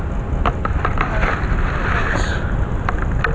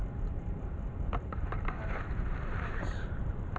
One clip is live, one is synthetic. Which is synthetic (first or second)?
second